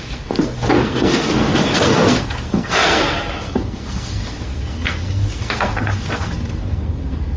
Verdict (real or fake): fake